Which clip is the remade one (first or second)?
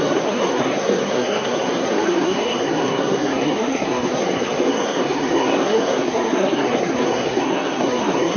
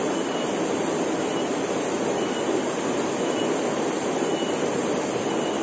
first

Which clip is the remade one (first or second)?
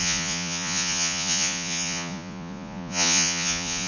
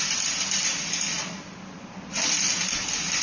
first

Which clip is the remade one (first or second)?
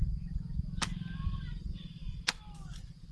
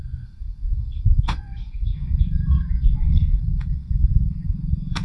second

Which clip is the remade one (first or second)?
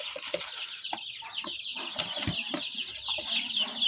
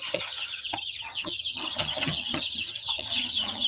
second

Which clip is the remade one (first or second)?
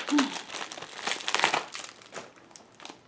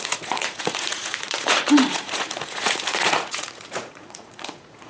second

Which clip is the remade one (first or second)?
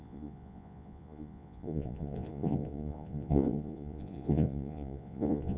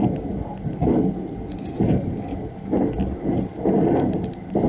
first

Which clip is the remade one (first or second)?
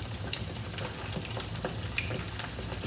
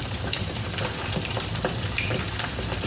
second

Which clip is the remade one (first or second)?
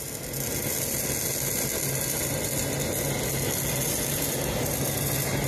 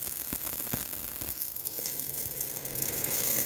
second